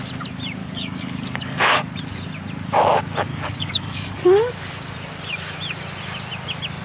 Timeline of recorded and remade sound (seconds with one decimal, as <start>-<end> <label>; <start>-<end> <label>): 0.0-0.6 recorded; 0.6-1.9 remade; 1.9-3.3 recorded; 3.3-4.5 remade; 4.5-6.8 recorded